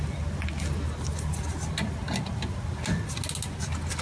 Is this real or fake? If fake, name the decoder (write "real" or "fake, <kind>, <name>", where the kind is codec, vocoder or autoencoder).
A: real